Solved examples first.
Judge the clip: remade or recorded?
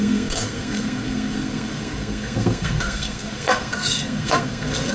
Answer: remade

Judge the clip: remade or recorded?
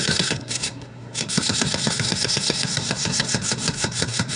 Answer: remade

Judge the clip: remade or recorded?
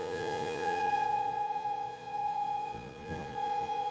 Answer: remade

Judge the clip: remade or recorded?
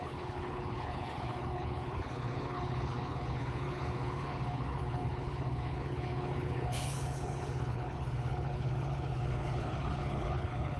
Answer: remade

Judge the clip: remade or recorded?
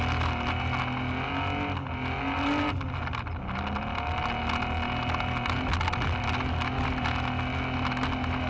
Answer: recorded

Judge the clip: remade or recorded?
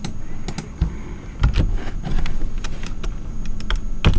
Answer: recorded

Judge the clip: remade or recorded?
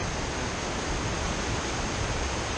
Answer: recorded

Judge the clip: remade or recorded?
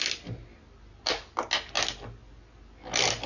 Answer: recorded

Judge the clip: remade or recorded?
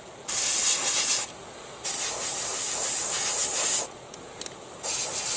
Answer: recorded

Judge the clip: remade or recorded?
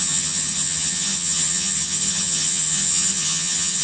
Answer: remade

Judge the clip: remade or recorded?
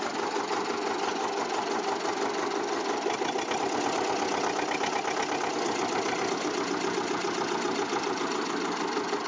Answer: recorded